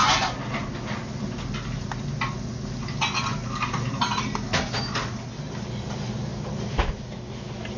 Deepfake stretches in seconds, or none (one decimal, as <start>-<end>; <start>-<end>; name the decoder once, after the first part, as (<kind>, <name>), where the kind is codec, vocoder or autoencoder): none